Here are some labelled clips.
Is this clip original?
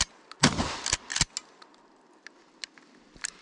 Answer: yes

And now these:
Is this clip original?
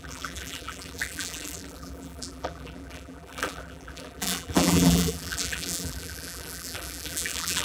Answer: no